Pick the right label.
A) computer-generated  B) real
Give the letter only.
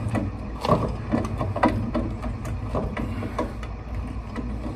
B